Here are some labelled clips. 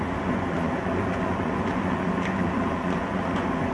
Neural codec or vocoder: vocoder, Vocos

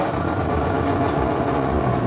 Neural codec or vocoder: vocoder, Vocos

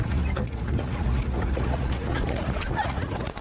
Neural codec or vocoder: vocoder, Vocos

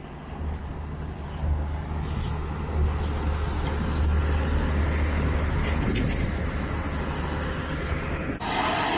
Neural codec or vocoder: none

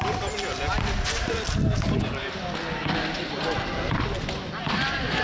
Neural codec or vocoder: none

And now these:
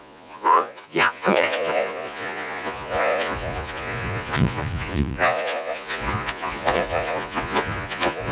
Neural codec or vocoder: vocoder, Vocos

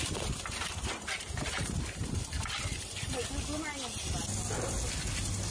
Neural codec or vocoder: none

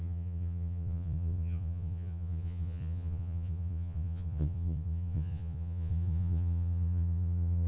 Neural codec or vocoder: vocoder, Vocos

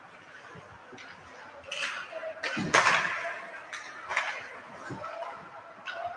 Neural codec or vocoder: none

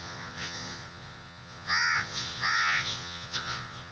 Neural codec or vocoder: vocoder, Vocos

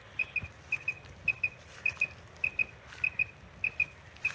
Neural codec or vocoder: none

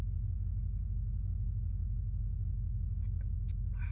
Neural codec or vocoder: none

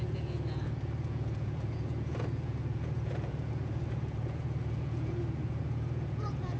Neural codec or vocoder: vocoder, Vocos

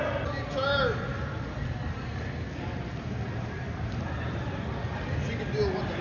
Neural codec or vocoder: none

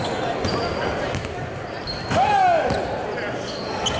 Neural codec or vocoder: none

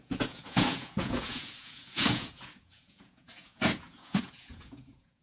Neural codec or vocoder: vocoder, Vocos